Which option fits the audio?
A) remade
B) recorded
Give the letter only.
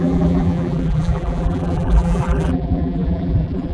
A